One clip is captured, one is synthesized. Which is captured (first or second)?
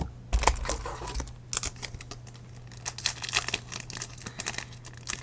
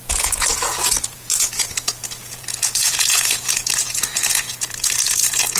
first